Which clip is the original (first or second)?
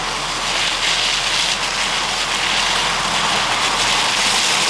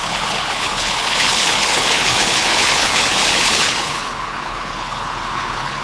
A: first